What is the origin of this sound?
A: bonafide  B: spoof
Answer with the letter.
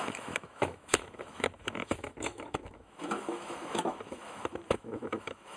B